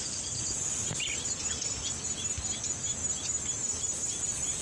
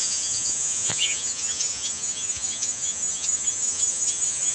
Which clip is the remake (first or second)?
second